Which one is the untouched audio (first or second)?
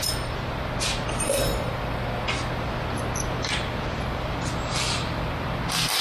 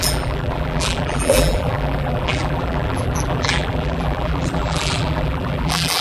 first